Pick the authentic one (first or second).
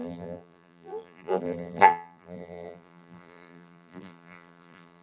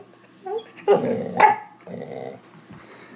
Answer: second